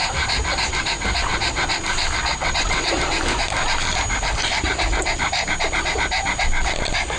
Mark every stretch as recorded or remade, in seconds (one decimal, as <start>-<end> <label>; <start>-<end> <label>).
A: 0.0-2.4 recorded; 2.4-2.9 remade; 2.9-7.2 recorded